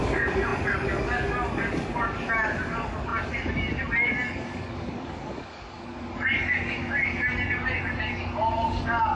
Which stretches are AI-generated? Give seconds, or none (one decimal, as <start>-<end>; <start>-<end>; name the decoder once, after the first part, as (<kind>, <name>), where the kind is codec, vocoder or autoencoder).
0.0-9.2 (codec, DAC)